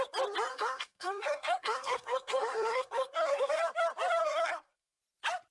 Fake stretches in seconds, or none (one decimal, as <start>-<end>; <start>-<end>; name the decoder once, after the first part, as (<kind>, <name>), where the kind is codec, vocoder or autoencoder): 0.5-3.6 (codec, SNAC); 4.2-5.0